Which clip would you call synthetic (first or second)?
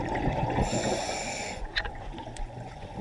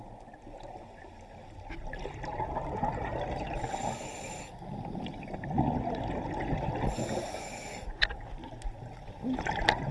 first